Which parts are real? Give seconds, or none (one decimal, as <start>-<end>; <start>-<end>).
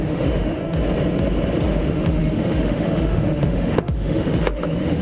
0.6-1.6